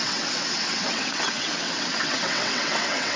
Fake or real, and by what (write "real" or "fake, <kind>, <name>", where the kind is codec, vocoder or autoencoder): fake, vocoder, WaveNeXt